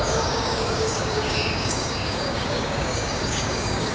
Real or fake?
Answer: fake